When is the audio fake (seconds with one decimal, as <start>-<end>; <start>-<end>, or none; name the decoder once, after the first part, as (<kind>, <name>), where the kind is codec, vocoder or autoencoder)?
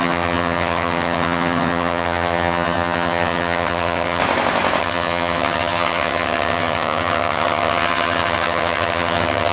0.0-4.2 (vocoder, HiFi-GAN); 4.8-9.5